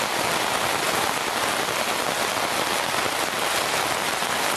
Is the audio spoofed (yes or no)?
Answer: no